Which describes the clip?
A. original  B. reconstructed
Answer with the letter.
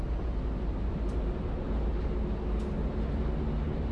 A